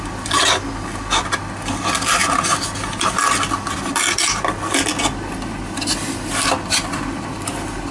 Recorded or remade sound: recorded